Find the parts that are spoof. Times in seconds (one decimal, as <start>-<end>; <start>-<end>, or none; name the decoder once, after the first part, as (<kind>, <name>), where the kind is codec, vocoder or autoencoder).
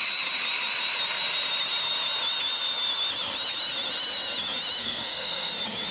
4.8-5.5 (codec, SNAC)